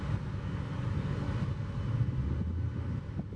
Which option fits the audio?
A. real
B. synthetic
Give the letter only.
A